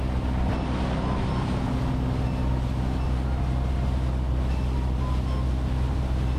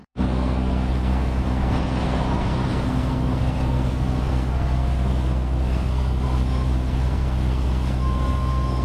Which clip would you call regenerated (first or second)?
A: second